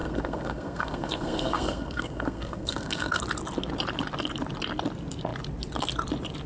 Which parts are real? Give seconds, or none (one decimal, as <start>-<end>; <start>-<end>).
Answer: 3.2-6.5